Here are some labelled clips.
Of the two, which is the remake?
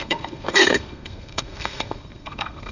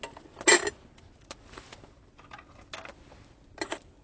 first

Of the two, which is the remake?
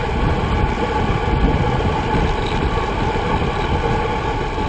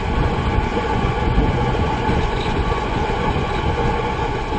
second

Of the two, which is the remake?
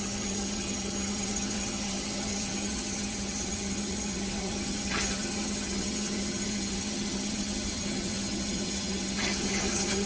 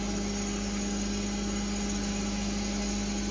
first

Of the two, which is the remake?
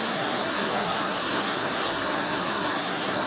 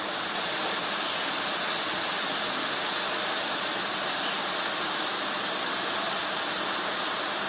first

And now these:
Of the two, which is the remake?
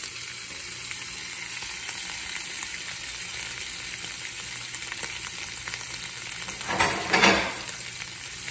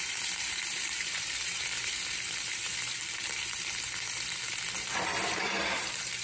second